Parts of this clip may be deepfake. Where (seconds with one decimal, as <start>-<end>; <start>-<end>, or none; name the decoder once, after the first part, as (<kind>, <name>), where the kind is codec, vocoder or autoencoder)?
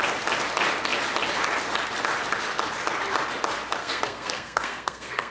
3.8-5.3 (codec, SNAC)